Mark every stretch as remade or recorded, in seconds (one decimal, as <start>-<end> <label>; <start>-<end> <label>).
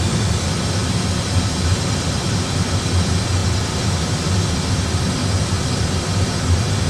0.0-0.8 remade; 0.8-1.7 recorded; 1.7-3.4 remade; 3.4-4.8 recorded; 4.8-5.2 remade; 5.2-5.8 recorded; 5.8-6.9 remade